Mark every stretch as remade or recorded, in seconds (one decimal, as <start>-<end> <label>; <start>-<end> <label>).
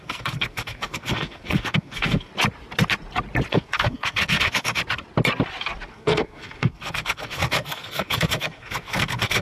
0.0-2.3 remade; 2.3-3.5 recorded; 3.5-4.8 remade; 4.8-5.9 recorded; 5.9-9.4 remade